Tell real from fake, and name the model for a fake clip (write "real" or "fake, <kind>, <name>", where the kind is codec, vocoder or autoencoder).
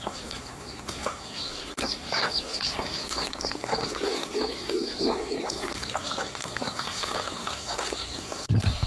fake, codec, SNAC